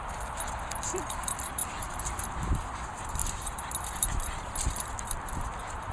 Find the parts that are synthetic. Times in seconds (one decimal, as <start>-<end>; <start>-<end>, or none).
0.0-5.9